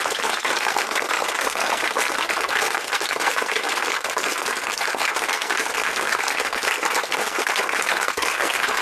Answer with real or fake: fake